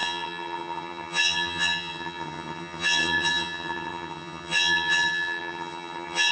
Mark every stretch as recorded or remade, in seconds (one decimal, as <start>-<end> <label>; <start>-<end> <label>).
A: 0.0-6.3 remade